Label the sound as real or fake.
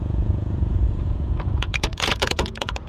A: fake